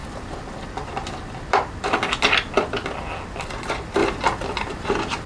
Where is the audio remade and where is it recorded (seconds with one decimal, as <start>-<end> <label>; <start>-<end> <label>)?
0.0-5.3 recorded

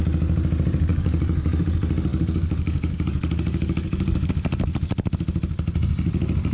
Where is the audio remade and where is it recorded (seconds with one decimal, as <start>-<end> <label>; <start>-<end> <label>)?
0.0-0.9 recorded; 0.9-1.6 remade; 1.6-2.1 recorded; 2.1-4.3 remade; 4.3-6.5 recorded